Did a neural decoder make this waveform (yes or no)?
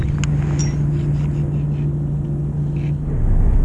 no